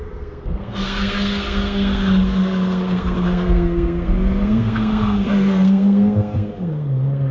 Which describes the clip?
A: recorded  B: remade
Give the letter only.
B